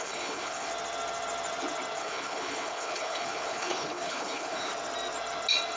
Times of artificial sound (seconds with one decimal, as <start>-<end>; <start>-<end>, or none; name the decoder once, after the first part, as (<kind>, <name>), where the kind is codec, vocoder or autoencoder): 0.0-0.7 (codec, HILCodec); 2.0-4.7